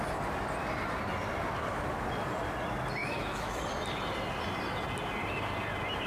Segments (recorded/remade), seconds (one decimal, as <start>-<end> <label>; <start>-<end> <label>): 0.0-3.0 recorded; 3.0-3.6 remade; 3.6-6.1 recorded